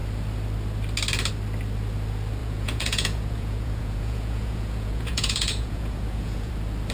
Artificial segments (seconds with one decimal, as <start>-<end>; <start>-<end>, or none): 2.4-6.5